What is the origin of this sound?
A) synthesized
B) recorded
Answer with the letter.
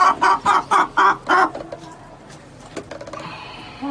B